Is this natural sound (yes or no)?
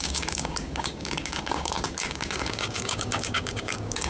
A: no